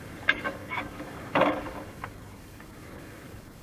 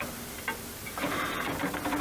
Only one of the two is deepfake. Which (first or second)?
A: first